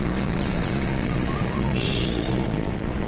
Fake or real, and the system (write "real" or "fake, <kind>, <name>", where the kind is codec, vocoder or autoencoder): fake, vocoder, Vocos